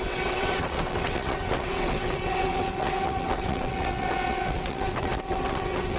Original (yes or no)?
no